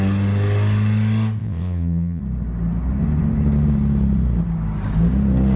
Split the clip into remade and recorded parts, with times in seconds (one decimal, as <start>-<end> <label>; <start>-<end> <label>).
0.0-1.4 recorded; 1.4-2.2 remade; 2.2-5.6 recorded